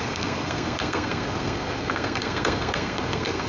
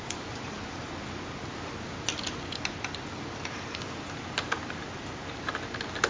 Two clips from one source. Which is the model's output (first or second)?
first